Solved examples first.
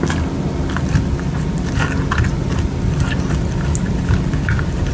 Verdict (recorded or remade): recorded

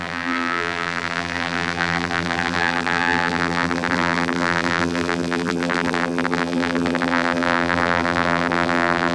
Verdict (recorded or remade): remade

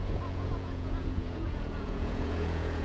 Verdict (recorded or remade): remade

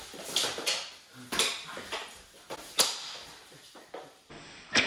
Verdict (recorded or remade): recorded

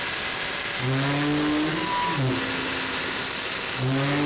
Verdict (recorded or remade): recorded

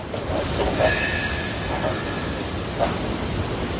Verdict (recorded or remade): recorded